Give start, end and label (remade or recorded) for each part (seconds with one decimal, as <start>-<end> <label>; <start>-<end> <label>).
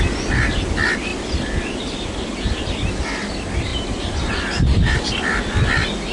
0.0-3.7 recorded; 3.7-5.1 remade; 5.1-6.1 recorded